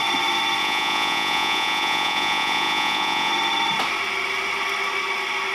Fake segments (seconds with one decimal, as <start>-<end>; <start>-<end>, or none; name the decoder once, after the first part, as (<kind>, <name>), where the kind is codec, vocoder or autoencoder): 0.6-3.3 (vocoder, Vocos)